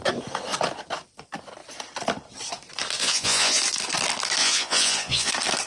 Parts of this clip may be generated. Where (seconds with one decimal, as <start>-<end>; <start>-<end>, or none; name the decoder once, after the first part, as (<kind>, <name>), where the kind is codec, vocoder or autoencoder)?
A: 3.0-3.6 (vocoder, Vocos); 4.4-5.3